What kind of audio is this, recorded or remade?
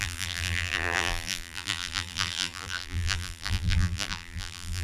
remade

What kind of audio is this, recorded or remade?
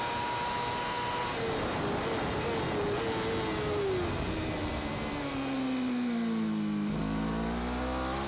recorded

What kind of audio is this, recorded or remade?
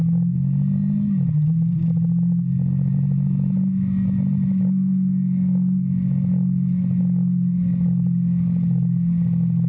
recorded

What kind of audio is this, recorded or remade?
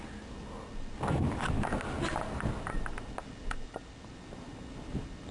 recorded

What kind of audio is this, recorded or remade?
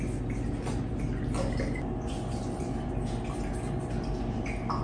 recorded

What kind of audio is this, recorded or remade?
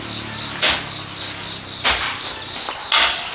recorded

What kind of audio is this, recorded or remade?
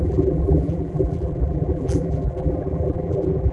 remade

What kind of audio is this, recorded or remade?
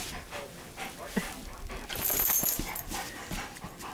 recorded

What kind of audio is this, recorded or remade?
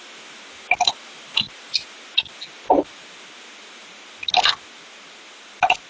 recorded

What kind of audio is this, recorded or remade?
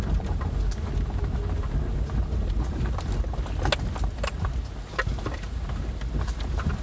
recorded